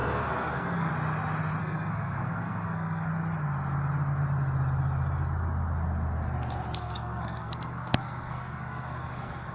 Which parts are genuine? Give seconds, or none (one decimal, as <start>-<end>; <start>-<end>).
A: 0.9-1.6; 3.1-6.8